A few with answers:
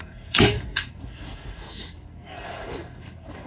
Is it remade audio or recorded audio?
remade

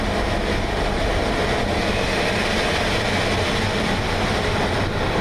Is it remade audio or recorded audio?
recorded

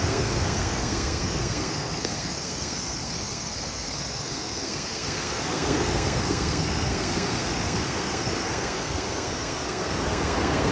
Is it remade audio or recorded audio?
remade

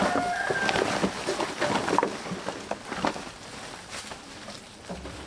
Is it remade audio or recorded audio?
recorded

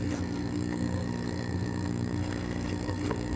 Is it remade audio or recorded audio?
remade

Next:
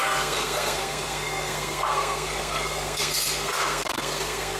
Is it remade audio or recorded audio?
remade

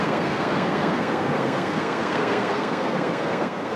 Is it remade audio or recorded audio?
remade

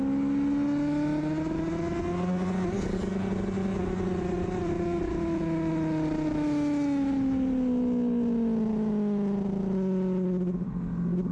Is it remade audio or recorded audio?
recorded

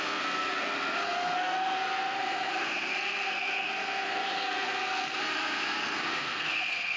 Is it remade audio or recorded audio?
remade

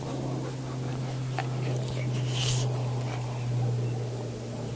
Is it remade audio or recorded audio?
recorded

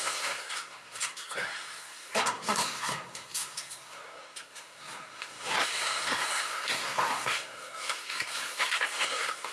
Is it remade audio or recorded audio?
remade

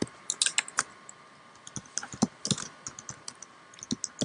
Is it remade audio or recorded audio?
recorded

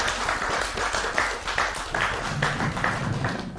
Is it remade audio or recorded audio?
recorded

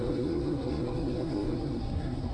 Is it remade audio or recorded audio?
remade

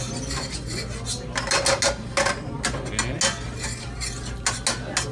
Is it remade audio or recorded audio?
recorded